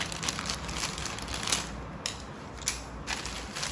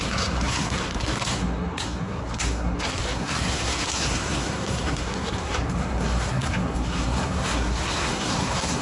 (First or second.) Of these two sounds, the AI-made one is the second